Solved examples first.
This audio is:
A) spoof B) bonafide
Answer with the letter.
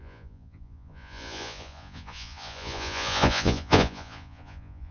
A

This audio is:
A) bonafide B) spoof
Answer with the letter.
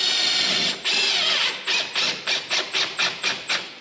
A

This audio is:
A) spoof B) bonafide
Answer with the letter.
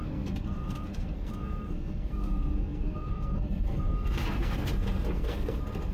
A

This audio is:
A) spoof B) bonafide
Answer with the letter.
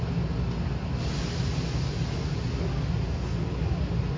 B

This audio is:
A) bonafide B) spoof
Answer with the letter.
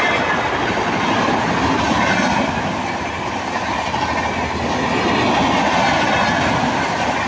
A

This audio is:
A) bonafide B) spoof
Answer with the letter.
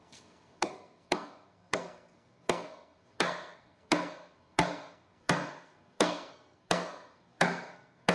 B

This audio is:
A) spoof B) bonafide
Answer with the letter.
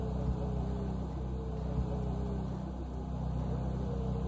B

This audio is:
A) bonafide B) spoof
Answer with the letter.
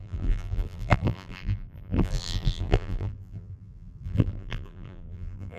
B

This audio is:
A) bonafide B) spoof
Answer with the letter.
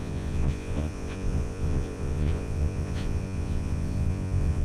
B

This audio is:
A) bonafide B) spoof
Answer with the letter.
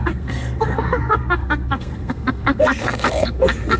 B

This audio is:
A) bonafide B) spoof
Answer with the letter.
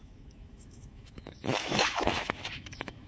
B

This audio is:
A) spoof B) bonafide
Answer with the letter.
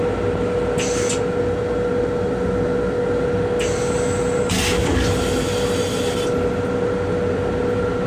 B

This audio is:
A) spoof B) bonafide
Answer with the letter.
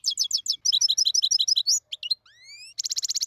B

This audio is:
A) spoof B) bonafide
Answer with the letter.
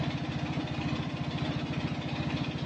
B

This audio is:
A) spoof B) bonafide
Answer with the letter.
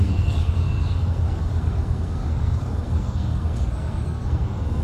A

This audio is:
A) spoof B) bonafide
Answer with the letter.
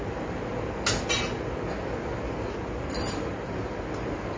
B